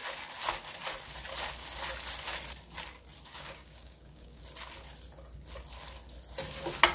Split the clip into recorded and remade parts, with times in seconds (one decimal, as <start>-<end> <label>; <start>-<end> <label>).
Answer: 0.0-3.3 recorded; 3.3-4.4 remade; 4.4-6.9 recorded